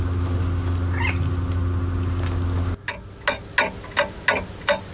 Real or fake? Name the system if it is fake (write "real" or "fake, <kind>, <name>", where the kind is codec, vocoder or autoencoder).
real